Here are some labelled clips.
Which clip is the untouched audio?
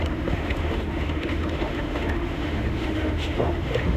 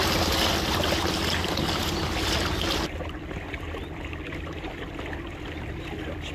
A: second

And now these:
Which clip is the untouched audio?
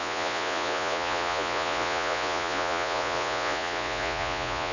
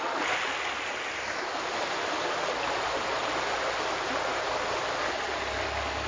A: second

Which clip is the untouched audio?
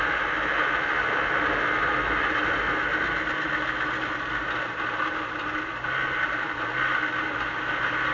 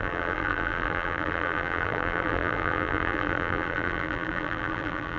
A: first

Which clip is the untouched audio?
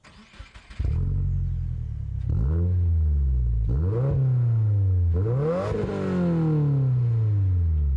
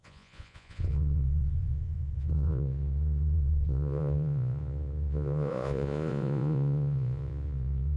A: first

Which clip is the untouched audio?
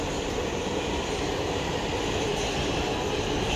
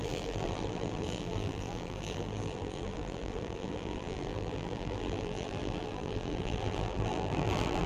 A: first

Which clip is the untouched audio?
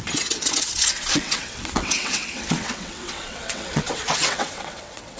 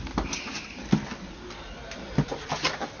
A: second